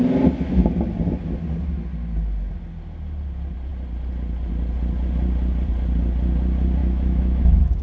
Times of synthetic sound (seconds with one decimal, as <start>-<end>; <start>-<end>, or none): 6.8-7.8